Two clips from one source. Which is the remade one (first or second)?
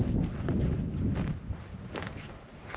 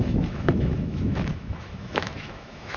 second